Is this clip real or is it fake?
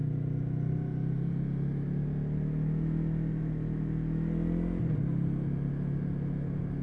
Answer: real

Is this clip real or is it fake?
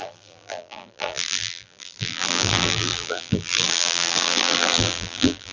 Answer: fake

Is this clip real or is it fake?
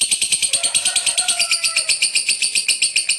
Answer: fake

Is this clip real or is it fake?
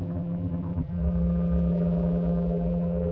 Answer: fake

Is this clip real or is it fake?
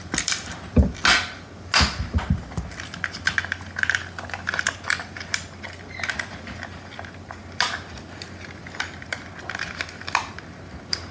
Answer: real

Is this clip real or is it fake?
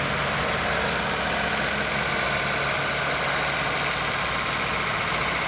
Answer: real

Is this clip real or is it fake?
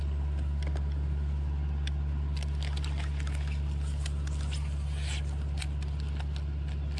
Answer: real